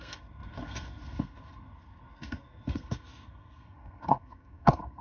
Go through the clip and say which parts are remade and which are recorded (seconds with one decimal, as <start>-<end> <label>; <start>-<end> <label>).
0.0-5.0 remade